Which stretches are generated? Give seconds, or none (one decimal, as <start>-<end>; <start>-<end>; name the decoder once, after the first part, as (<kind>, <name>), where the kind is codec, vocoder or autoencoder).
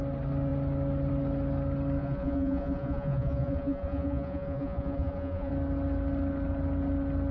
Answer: 2.0-5.5 (vocoder, Vocos)